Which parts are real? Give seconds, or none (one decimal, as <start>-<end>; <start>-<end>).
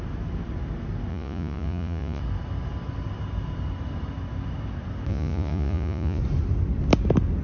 0.0-1.1; 2.2-5.1; 6.2-7.4